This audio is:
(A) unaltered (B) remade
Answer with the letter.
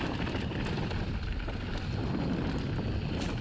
A